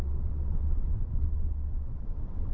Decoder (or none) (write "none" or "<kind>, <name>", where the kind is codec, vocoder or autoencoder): vocoder, WaveNeXt